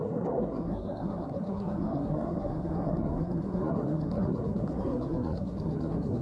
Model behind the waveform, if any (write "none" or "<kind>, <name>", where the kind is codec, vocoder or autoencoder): codec, SNAC